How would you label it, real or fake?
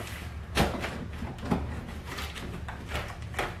real